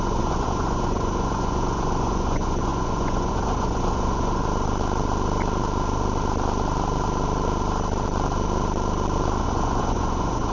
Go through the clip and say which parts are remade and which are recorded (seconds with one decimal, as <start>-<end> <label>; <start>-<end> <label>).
0.0-4.4 remade; 4.4-9.4 recorded; 9.4-10.5 remade